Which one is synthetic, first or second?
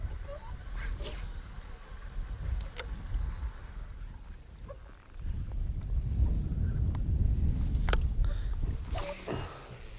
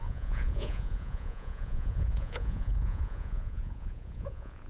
second